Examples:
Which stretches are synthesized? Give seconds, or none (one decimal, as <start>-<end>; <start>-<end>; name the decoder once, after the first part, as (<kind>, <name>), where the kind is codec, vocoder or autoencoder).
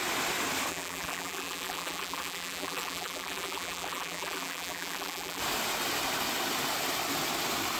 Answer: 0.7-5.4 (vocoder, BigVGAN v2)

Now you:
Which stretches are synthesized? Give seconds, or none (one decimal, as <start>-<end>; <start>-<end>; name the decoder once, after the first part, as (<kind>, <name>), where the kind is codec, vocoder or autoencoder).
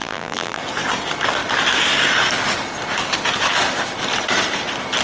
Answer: 0.0-0.6 (vocoder, BigVGAN v2)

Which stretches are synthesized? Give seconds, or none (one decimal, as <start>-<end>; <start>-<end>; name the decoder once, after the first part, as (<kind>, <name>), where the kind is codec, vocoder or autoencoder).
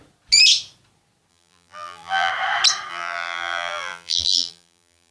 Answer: 1.3-2.3 (vocoder, BigVGAN v2); 2.9-5.1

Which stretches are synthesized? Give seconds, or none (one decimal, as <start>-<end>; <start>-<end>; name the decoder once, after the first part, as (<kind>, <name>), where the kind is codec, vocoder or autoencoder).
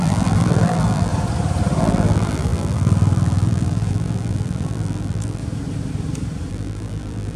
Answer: 0.0-1.1 (vocoder, BigVGAN v2); 1.8-5.4; 6.5-7.4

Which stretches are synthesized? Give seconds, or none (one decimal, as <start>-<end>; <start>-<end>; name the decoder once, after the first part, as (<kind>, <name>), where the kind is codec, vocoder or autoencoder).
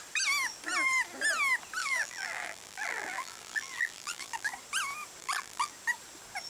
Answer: 1.8-4.5 (vocoder, BigVGAN v2); 5.2-5.7